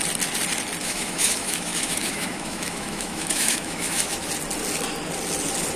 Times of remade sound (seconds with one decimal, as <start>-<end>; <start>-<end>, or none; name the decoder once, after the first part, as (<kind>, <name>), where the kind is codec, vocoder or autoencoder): 0.8-4.3 (autoencoder, DAC-VAE)